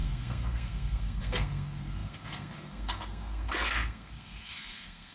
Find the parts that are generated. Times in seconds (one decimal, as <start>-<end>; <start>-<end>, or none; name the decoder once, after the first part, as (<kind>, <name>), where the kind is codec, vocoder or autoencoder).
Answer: 0.0-5.1 (codec, SNAC)